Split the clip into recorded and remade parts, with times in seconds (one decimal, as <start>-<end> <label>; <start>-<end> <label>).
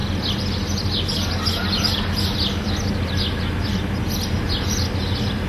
0.0-5.5 recorded